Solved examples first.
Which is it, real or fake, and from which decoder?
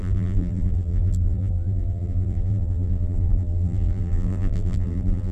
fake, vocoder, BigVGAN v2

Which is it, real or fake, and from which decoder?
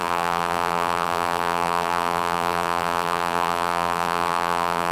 fake, vocoder, BigVGAN v2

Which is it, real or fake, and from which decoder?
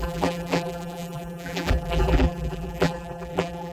fake, vocoder, BigVGAN v2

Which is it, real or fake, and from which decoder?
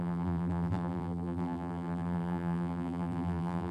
fake, vocoder, BigVGAN v2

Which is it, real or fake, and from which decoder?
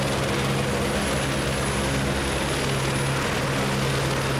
real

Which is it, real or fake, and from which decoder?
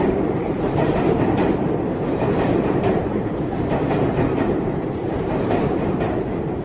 fake, vocoder, BigVGAN v2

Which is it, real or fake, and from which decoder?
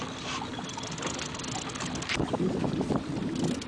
fake, vocoder, BigVGAN v2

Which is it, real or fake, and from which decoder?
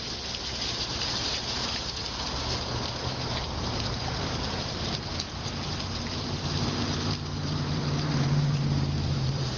fake, vocoder, BigVGAN v2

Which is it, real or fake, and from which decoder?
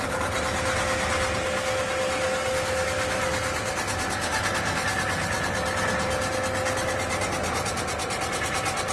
real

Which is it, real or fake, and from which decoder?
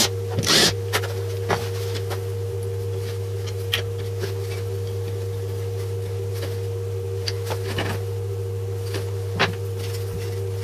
real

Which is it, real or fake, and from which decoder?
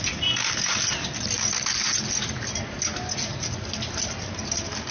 real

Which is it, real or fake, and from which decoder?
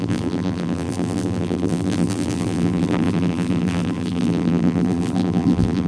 fake, vocoder, BigVGAN v2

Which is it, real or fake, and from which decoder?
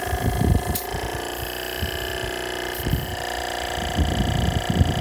real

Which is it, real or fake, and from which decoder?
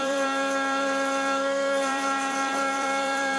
fake, vocoder, BigVGAN v2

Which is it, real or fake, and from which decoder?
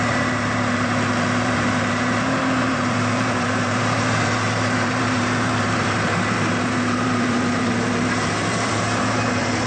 fake, vocoder, BigVGAN v2